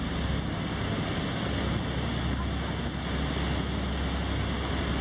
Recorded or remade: recorded